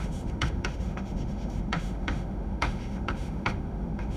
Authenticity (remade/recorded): remade